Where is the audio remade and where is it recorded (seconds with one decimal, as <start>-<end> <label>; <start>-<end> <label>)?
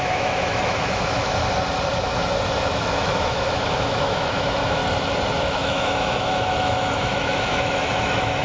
0.0-1.4 remade; 1.4-2.6 recorded; 2.6-4.8 remade; 4.8-5.4 recorded; 5.4-8.4 remade